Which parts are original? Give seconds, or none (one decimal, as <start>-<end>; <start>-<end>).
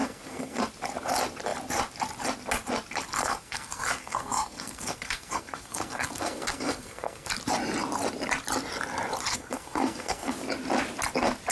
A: 0.6-3.2; 7.3-9.3; 10.3-11.5